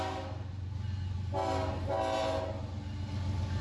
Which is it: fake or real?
real